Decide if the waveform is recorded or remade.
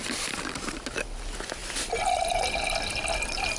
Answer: recorded